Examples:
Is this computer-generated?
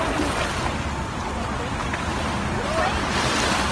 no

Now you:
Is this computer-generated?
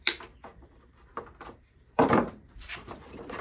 yes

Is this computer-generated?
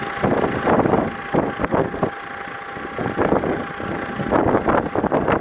no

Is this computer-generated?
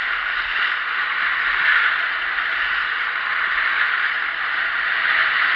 no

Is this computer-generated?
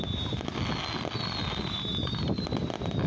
no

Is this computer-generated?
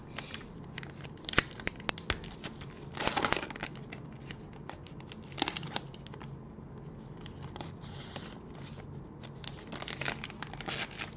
no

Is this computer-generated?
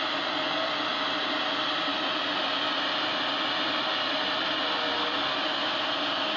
no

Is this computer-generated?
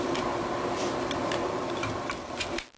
yes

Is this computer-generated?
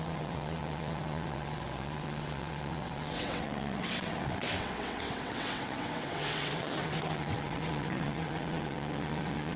yes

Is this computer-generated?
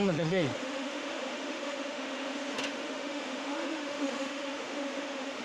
yes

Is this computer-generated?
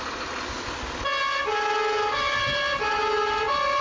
no